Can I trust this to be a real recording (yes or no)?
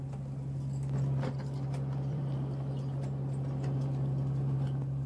no